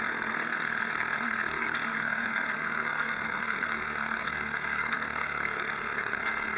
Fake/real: fake